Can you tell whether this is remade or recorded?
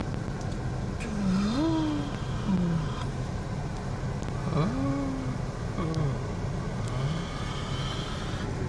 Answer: recorded